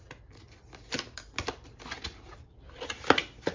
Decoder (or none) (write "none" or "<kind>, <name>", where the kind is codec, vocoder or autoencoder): none